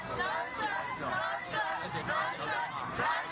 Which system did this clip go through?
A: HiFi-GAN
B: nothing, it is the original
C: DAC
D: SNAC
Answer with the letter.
B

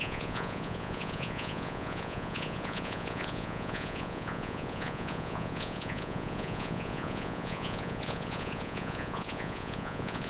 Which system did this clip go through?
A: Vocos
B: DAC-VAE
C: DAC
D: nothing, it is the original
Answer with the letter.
A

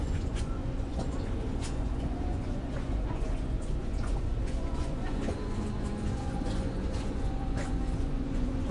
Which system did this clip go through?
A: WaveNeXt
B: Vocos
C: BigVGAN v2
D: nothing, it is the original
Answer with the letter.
B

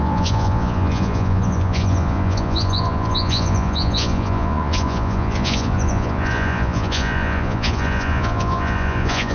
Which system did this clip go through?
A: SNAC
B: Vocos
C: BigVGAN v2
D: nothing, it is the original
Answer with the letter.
B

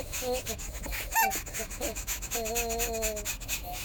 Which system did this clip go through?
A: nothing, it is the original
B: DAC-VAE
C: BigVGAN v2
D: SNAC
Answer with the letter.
B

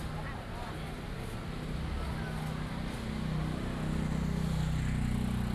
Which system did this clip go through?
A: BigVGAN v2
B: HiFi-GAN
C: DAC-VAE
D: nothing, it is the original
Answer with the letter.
D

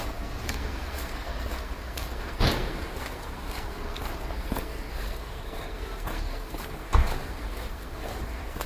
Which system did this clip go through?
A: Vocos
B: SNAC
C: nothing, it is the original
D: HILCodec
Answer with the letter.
B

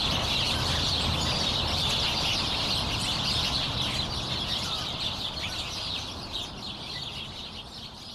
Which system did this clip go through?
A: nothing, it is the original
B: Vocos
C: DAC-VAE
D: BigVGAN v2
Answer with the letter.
D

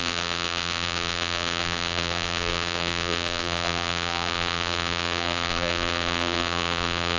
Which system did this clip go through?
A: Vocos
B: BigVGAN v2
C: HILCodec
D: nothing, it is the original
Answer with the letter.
B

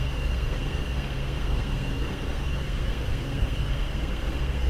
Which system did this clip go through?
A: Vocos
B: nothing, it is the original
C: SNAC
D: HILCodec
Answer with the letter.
C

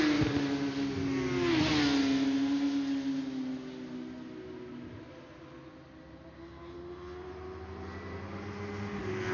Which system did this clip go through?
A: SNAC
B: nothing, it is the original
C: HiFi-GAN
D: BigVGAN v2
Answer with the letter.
B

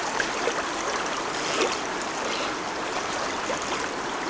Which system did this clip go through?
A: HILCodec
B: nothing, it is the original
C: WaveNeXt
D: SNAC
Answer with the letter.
B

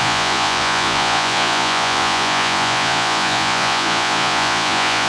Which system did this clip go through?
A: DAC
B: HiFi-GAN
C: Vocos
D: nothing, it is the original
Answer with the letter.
C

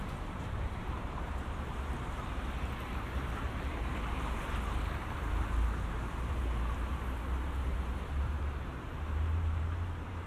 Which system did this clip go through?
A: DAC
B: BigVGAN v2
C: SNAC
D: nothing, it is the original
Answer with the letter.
B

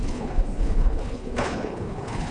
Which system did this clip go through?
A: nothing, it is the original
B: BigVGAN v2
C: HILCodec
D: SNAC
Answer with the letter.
C